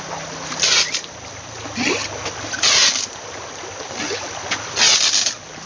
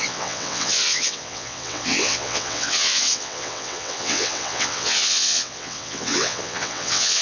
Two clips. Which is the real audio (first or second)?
first